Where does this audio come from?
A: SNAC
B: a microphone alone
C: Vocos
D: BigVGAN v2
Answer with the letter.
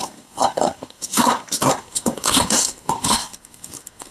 A